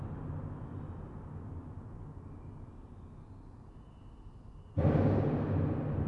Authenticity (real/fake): real